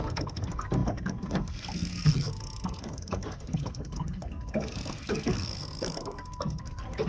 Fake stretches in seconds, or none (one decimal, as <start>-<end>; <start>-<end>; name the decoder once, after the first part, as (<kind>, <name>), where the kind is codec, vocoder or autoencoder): 0.0-7.1 (codec, SNAC)